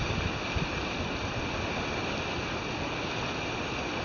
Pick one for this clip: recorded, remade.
recorded